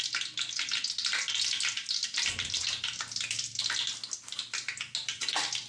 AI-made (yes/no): no